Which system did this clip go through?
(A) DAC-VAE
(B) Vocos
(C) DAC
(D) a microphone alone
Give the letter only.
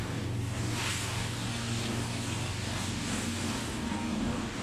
C